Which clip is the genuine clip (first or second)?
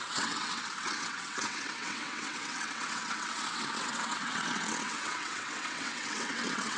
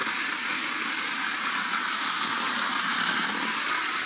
second